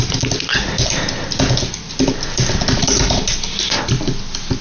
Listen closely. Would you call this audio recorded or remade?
recorded